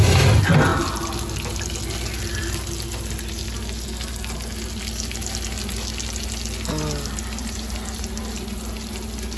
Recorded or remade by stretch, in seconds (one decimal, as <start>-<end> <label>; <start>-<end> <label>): 0.0-9.4 recorded